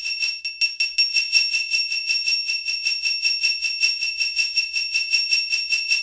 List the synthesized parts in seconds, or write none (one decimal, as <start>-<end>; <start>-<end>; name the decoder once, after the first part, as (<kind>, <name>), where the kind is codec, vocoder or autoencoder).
0.0-0.4 (vocoder, WaveNeXt); 1.1-6.0